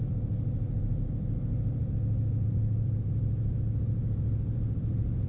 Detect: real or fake fake